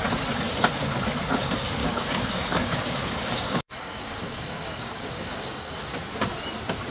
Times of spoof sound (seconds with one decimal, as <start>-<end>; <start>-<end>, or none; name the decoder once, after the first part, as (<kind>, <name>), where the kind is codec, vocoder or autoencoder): 1.8-5.7 (codec, DAC)